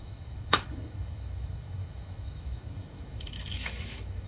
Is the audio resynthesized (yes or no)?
yes